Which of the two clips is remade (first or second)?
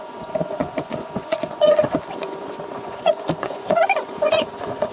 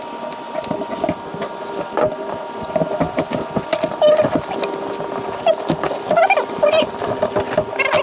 first